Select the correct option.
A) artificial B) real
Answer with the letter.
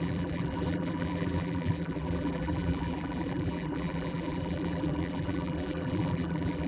A